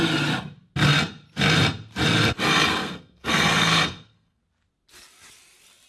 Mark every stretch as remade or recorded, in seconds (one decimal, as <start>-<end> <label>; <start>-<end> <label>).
0.0-2.7 recorded; 2.7-4.4 remade; 4.4-5.9 recorded